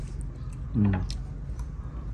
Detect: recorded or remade recorded